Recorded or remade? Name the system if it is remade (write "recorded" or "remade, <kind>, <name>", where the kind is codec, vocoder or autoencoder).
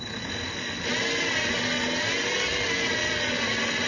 recorded